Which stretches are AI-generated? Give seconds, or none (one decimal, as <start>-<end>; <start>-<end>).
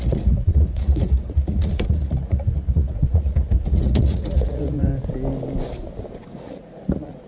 0.0-4.9; 6.4-7.3